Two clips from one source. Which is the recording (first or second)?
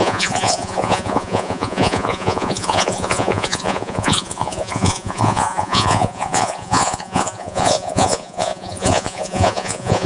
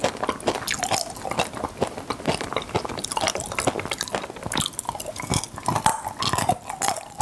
second